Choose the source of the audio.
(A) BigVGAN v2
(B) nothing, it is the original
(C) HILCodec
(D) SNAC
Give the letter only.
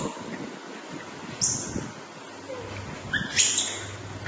B